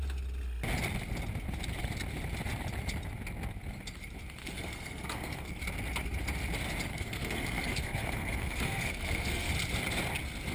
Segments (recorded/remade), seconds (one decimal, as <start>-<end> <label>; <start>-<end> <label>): 0.0-4.4 recorded; 4.4-5.6 remade; 5.6-6.9 recorded; 6.9-9.5 remade; 9.5-10.5 recorded

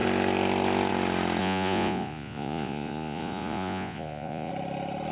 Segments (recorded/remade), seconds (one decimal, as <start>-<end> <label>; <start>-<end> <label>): 0.0-1.4 recorded; 1.4-4.5 remade; 4.5-5.1 recorded

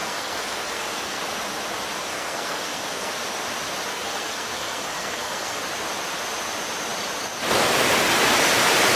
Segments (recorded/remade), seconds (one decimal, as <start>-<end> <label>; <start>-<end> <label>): 0.0-1.2 remade; 1.2-2.1 recorded; 2.1-3.1 remade; 3.1-3.9 recorded; 3.9-5.6 remade; 5.6-9.0 recorded

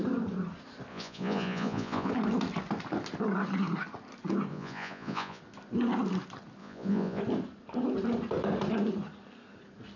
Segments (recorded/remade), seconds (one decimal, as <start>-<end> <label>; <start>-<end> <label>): 0.0-0.9 recorded; 0.9-2.1 remade; 2.1-4.5 recorded; 4.5-5.4 remade; 5.4-6.6 recorded; 6.6-7.2 remade; 7.2-10.0 recorded

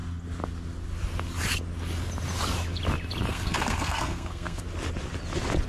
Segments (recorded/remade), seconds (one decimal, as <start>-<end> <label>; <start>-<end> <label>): 0.0-3.3 recorded; 3.3-4.6 remade; 4.6-5.7 recorded

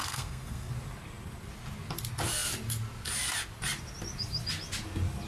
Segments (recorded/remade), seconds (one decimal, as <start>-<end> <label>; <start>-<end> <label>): 0.0-0.7 remade; 0.7-5.3 recorded